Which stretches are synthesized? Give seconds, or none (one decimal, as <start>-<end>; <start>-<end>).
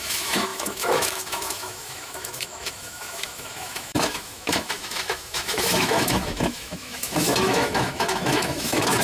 0.0-9.0